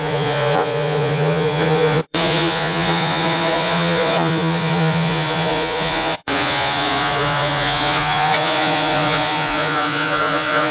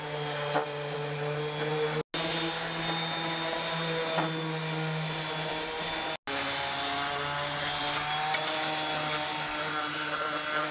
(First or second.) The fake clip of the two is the first